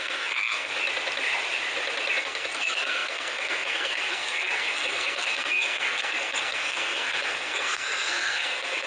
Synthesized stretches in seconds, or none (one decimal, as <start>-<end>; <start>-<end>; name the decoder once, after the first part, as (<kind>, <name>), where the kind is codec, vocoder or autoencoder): 0.0-0.7 (codec, SNAC); 2.2-8.9